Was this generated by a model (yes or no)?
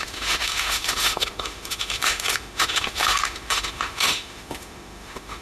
yes